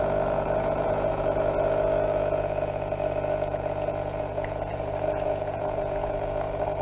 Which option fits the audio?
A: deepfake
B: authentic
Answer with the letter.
A